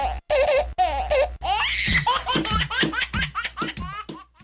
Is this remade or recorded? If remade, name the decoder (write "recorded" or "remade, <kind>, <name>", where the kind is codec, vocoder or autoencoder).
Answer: recorded